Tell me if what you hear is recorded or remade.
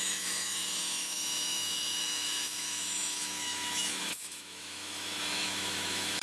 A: remade